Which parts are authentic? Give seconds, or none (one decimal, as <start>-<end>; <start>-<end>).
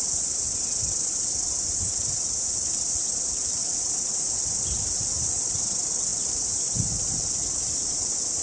none